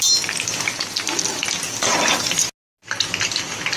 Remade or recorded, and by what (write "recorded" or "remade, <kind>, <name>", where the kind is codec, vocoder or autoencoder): recorded